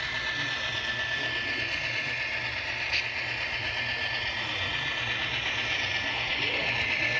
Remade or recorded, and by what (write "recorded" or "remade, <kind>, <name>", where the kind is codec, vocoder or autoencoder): recorded